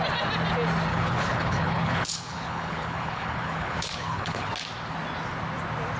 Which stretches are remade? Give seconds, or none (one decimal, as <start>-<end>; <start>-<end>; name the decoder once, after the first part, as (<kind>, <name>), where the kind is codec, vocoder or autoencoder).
0.9-4.5 (codec, HILCodec)